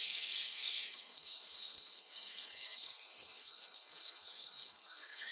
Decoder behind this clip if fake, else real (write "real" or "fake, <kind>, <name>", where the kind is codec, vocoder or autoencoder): fake, codec, SNAC